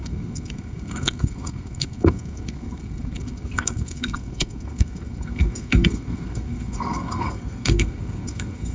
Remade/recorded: remade